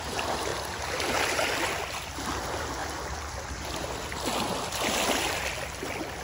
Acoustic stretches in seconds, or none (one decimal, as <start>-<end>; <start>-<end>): 0.0-6.2